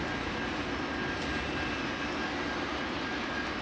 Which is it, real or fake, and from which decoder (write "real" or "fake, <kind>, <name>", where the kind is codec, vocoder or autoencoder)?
real